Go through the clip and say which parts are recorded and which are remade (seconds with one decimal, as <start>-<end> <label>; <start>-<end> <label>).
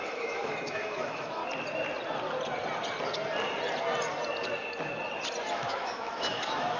0.0-1.4 remade; 1.4-5.5 recorded; 5.5-6.8 remade